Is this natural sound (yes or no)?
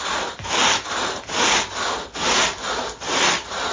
yes